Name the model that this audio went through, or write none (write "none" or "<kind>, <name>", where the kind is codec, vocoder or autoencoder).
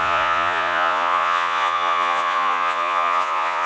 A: vocoder, Vocos